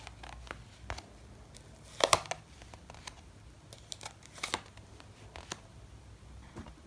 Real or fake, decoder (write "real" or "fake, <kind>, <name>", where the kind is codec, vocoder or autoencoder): real